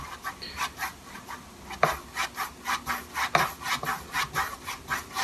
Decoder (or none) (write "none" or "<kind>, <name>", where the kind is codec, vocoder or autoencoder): none